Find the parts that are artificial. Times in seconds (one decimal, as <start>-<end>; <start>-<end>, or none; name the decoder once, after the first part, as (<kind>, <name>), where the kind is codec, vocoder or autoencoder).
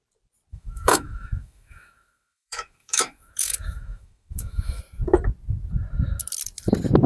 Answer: 0.5-4.8 (autoencoder, DAC-VAE)